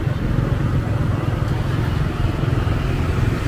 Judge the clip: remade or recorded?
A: recorded